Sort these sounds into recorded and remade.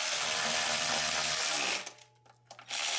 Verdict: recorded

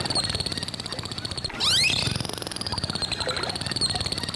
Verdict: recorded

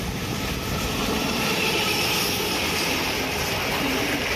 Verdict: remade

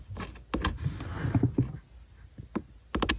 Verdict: recorded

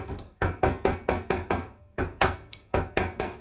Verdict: remade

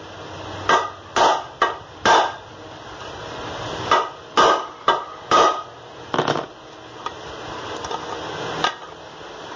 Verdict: recorded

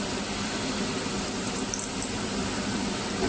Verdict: recorded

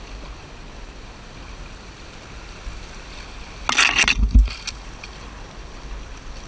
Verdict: recorded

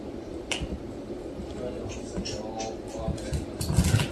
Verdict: recorded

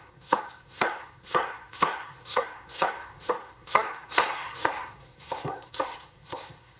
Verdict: remade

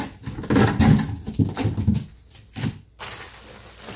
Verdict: recorded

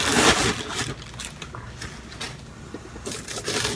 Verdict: recorded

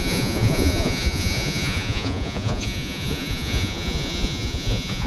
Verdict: remade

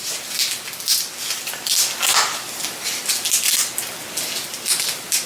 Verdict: recorded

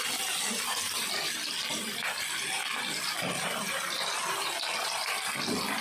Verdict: recorded